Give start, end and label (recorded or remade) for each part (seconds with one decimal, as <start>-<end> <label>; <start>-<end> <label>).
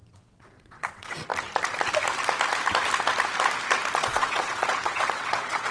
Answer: 0.0-1.3 remade; 1.3-4.0 recorded; 4.0-5.7 remade